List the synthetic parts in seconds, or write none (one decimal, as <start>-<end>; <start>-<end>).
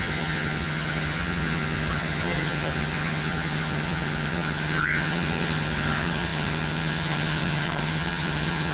0.0-8.7